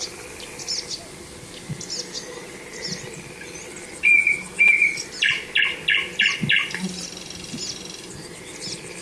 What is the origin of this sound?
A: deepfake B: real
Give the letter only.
B